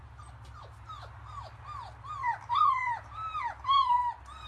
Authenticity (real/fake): real